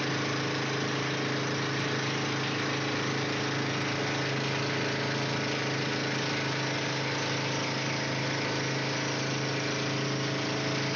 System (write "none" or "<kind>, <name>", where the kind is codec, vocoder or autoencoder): none